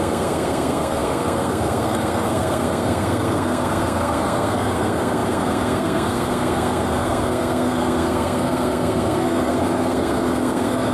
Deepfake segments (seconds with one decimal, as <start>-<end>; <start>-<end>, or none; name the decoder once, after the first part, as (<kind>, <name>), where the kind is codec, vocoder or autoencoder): 0.0-10.9 (codec, SNAC)